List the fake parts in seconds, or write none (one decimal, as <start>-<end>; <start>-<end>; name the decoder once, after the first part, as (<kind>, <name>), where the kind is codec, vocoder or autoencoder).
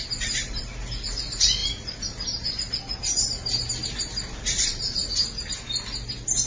none